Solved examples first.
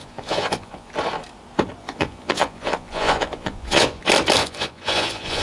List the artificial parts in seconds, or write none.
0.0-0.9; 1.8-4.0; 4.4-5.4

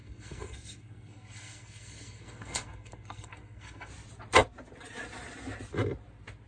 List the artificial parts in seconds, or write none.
0.0-3.9

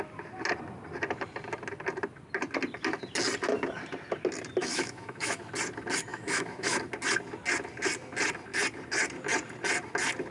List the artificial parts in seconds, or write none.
4.6-5.4; 6.1-6.8

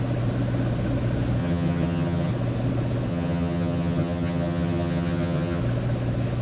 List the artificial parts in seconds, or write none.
1.4-2.3; 3.1-5.6

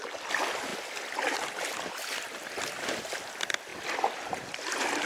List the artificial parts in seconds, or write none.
none